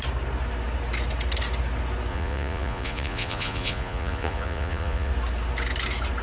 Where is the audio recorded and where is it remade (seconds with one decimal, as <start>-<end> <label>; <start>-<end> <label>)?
0.0-2.1 recorded; 2.1-5.1 remade; 5.1-6.2 recorded